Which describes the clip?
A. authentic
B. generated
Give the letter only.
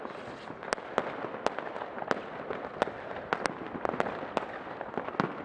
A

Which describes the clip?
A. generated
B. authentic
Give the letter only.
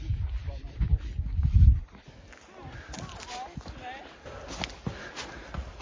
B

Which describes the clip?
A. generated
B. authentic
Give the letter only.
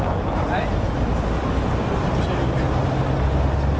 B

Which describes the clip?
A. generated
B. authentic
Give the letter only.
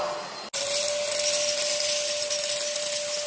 B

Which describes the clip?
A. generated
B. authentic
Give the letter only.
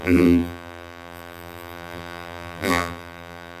A